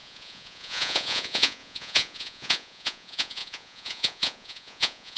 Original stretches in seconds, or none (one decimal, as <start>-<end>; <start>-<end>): none